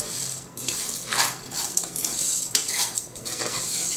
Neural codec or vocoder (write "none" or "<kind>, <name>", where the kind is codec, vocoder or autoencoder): codec, SNAC